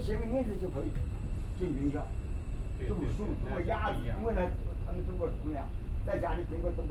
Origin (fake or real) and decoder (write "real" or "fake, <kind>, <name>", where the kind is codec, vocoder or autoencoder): real